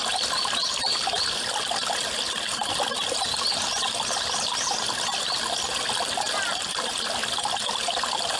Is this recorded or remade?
recorded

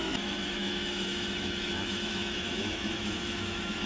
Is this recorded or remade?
remade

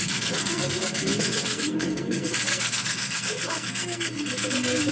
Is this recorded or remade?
remade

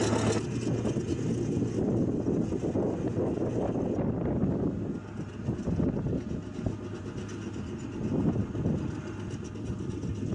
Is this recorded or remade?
recorded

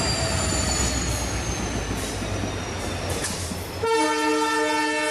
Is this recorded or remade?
recorded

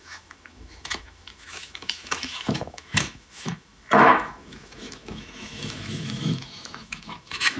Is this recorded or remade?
remade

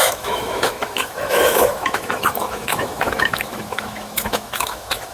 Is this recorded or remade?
remade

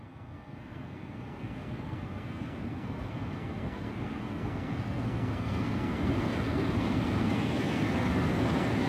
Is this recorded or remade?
remade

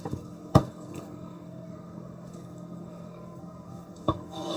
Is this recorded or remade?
remade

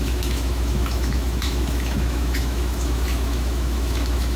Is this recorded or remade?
remade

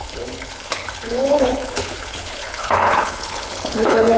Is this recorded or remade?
remade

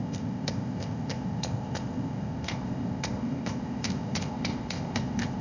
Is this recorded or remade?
remade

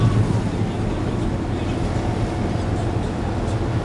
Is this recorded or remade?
recorded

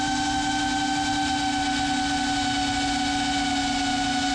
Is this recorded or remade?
recorded